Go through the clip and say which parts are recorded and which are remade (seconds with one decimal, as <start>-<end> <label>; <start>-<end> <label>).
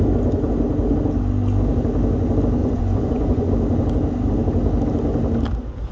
0.0-2.6 recorded; 2.6-3.5 remade; 3.5-5.9 recorded